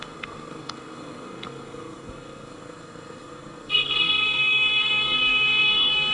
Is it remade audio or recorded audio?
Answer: remade